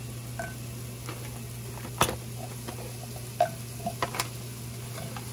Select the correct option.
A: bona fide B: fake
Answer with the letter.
A